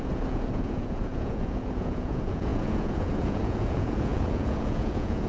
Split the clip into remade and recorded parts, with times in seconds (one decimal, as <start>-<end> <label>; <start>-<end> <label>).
0.0-5.3 remade